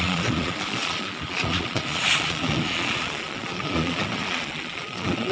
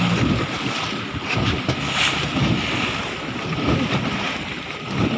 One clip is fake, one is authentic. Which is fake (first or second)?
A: first